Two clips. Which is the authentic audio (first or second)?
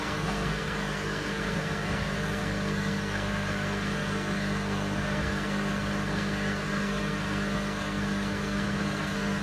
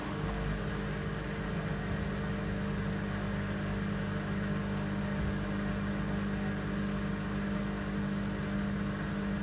second